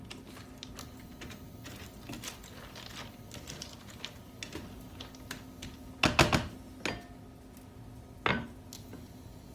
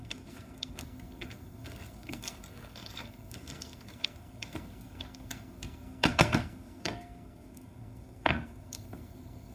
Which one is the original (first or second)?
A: first